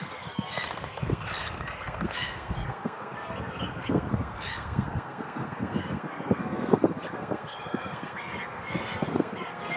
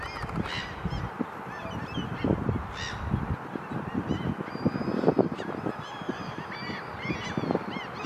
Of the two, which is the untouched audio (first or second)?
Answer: second